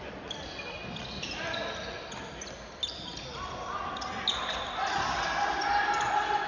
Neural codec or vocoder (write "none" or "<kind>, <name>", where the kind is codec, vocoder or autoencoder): none